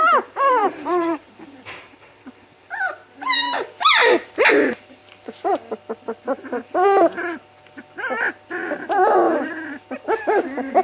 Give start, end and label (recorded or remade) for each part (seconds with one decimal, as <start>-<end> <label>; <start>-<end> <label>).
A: 0.0-3.0 remade; 3.0-4.5 recorded; 4.5-5.0 remade; 5.0-10.2 recorded; 10.2-10.8 remade